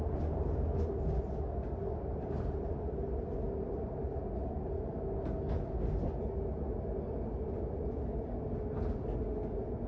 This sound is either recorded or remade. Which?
recorded